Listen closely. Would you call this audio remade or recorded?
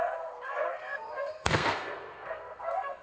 remade